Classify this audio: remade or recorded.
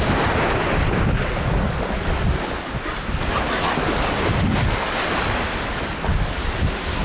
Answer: recorded